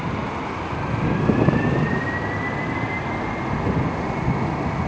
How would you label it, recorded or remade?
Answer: recorded